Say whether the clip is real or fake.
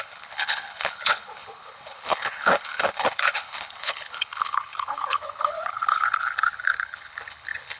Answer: fake